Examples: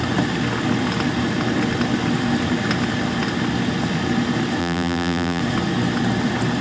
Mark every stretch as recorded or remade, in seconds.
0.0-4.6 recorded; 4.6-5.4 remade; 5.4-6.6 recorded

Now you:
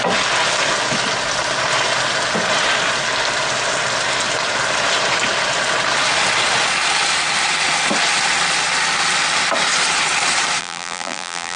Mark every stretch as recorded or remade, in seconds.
0.0-10.6 recorded; 10.6-11.6 remade